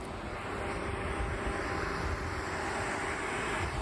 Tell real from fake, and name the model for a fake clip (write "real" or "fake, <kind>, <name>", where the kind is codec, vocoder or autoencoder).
real